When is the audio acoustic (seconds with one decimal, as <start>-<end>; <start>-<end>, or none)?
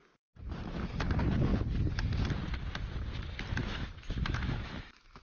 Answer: 0.0-3.6